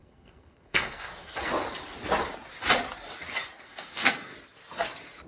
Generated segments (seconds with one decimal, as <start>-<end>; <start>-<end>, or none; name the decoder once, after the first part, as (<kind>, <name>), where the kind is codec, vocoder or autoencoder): 0.0-1.5 (codec, SNAC); 3.6-4.3